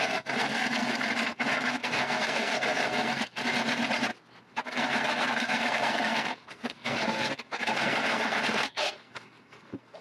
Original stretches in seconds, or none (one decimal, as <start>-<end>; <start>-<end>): 3.4-4.4

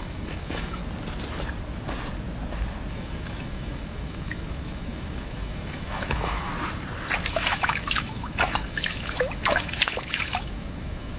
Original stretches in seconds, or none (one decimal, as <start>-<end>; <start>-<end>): 0.8-2.9; 6.5-7.3